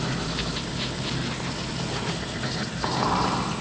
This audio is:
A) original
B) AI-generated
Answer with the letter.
A